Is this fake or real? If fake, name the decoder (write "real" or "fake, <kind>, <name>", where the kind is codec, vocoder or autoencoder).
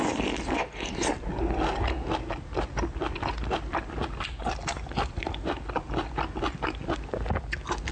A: real